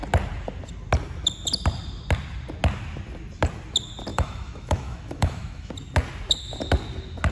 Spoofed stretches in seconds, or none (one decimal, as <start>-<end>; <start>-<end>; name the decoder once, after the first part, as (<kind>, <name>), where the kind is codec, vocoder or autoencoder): 4.1-5.7 (autoencoder, DAC-VAE)